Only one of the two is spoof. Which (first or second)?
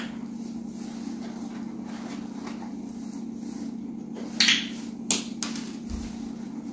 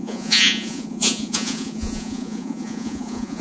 second